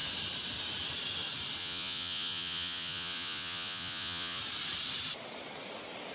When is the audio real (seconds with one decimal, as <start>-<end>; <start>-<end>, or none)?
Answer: 0.0-1.6; 4.4-6.1